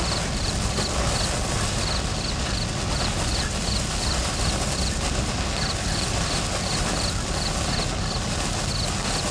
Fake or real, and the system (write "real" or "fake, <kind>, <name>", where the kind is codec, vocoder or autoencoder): real